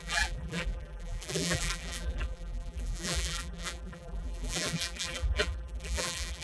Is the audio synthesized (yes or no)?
yes